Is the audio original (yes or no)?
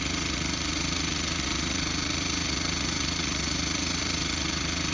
no